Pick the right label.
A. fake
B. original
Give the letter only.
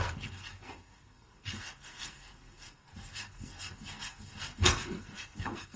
A